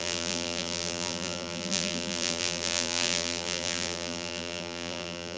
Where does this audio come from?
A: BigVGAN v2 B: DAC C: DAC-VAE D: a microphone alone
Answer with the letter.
A